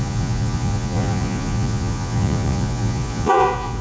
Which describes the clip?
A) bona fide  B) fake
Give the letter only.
B